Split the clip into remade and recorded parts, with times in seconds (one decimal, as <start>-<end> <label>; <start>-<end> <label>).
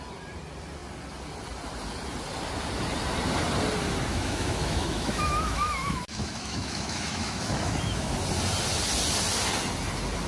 0.0-4.1 recorded; 4.1-8.1 remade; 8.1-10.3 recorded